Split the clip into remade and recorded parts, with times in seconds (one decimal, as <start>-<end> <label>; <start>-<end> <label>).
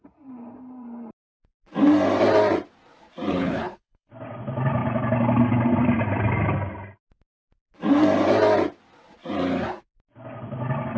0.0-3.3 recorded; 3.3-4.1 remade; 4.1-11.0 recorded